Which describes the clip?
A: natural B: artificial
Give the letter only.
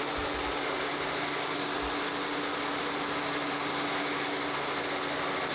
A